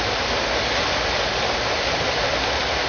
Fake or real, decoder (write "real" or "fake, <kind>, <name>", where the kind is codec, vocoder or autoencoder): real